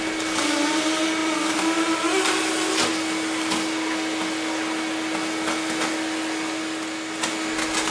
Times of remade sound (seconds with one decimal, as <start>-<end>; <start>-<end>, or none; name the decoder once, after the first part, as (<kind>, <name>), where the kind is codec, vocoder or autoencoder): none